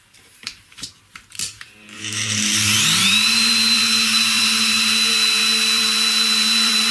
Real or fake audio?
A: fake